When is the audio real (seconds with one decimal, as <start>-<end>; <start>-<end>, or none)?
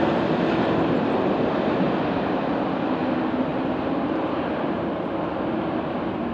0.0-3.5; 4.5-6.3